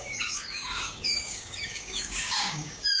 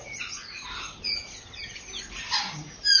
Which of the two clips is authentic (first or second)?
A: second